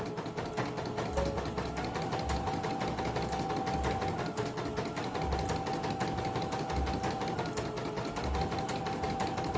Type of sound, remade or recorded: recorded